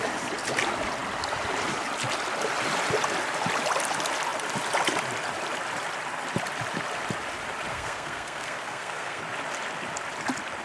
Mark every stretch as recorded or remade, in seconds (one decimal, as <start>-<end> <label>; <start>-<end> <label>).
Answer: 0.0-7.7 recorded; 7.7-9.2 remade; 9.2-10.6 recorded